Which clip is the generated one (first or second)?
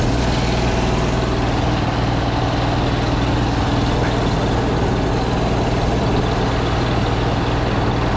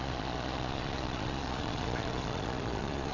second